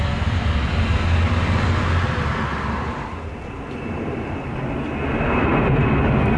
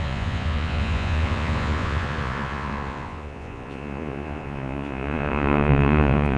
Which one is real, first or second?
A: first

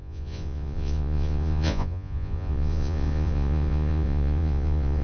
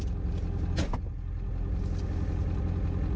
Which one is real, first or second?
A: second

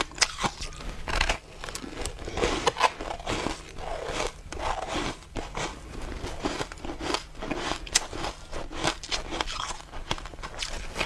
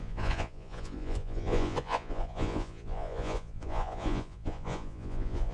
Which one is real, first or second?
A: first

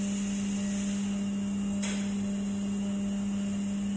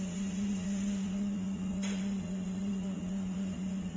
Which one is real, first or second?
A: first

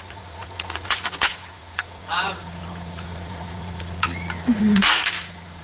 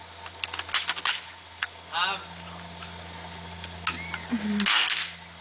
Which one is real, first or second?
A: second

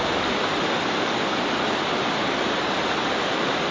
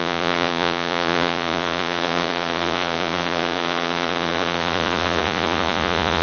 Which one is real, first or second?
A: first